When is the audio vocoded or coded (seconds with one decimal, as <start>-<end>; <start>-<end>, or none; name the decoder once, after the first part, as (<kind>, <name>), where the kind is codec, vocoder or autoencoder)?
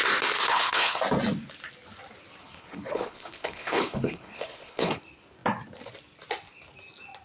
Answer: 0.5-1.0 (codec, HILCodec); 2.4-5.0